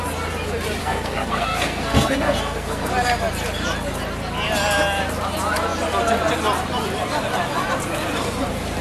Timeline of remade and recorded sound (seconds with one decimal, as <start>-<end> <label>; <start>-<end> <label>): 0.0-0.8 recorded; 0.8-2.9 remade; 2.9-8.8 recorded